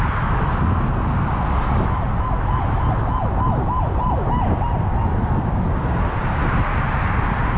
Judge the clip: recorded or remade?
recorded